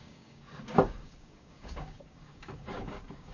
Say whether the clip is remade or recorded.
remade